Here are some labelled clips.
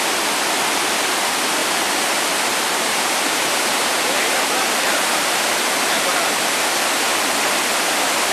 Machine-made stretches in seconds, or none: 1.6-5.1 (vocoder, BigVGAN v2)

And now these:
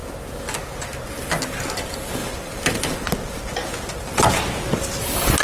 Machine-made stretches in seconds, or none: 2.2-3.1 (vocoder, BigVGAN v2)

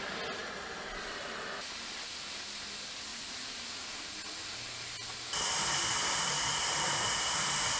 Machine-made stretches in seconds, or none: 3.1-4.0 (vocoder, BigVGAN v2)